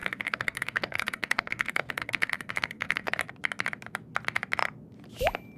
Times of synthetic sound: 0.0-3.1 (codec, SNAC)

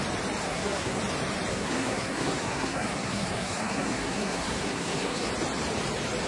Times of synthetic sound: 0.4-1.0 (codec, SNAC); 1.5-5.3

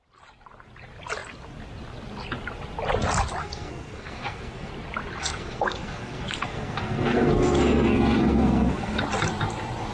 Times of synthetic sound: 3.4-4.7 (codec, SNAC); 5.2-9.0

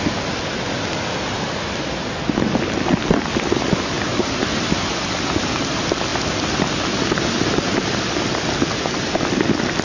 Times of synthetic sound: none

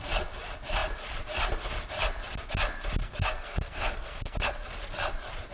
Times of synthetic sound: 3.0-4.5 (codec, SNAC)

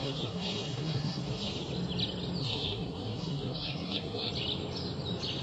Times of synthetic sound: 0.0-1.5 (codec, SNAC); 2.4-4.3

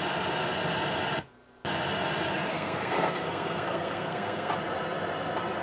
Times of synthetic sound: 2.5-4.5 (codec, SNAC)